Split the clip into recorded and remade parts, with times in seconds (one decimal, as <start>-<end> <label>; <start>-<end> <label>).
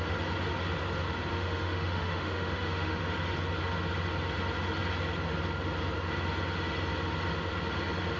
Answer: 0.0-1.3 recorded; 1.3-3.0 remade; 3.0-8.2 recorded